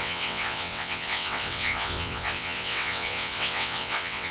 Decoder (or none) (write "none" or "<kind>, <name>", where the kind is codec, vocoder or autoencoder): vocoder, WaveNeXt